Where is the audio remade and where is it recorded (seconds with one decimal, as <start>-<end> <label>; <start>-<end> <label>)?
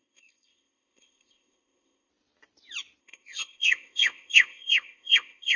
0.0-2.1 remade; 2.1-3.0 recorded; 3.0-5.6 remade